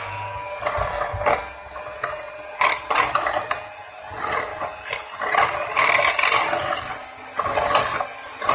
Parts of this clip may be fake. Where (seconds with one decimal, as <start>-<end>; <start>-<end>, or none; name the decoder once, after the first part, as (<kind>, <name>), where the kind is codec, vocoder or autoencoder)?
none